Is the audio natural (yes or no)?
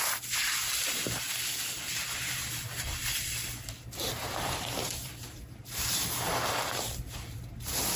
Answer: no